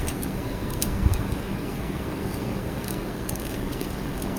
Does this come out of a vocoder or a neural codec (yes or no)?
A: yes